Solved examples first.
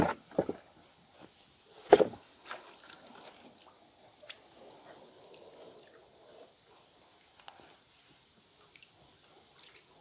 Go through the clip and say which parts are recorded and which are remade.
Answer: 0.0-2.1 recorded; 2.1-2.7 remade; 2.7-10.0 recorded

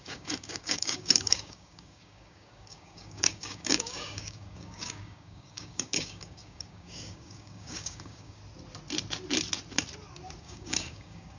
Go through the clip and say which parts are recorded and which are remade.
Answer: 0.0-8.4 remade; 8.4-10.4 recorded; 10.4-11.4 remade